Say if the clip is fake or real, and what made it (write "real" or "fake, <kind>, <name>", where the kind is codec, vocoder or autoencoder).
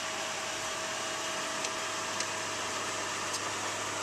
real